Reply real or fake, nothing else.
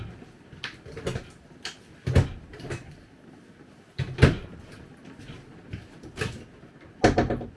real